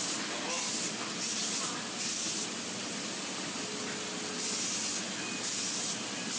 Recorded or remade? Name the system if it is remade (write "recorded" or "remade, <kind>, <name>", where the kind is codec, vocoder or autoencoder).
recorded